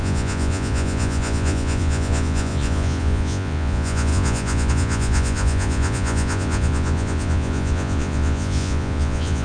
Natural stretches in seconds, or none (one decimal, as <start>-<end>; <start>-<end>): none